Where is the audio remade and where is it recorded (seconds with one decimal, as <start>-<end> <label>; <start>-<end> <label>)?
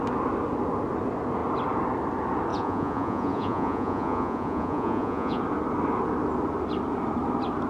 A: 0.0-2.5 recorded; 2.5-5.4 remade; 5.4-7.7 recorded